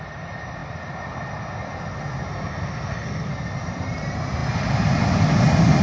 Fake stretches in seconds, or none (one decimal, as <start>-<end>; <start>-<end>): 2.3-3.3